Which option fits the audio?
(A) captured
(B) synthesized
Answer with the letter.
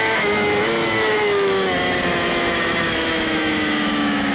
B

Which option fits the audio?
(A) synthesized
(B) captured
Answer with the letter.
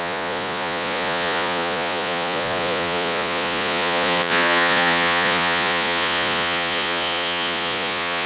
A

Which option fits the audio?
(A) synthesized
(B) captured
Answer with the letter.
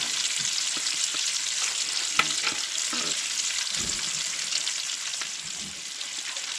B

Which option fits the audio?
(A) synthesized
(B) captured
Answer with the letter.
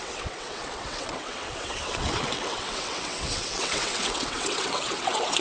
A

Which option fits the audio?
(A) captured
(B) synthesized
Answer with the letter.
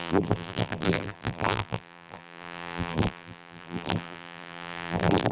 B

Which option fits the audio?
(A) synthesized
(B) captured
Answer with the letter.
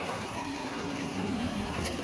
A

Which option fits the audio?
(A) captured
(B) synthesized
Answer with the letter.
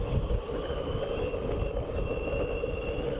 A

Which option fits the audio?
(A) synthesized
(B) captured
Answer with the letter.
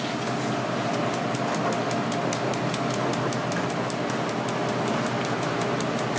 B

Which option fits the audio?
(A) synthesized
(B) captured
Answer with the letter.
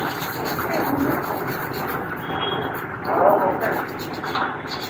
B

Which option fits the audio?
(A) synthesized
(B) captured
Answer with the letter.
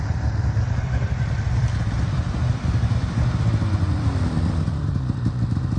A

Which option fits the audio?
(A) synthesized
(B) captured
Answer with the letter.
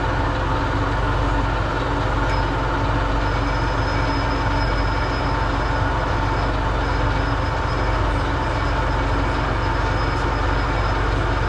B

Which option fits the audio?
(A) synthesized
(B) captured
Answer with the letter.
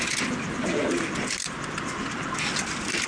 B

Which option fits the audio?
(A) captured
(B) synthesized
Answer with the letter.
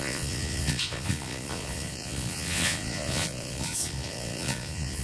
B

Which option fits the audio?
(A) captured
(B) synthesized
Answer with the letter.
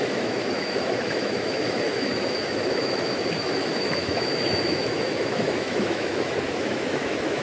B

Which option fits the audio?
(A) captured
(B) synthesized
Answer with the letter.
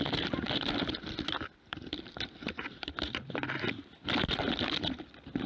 B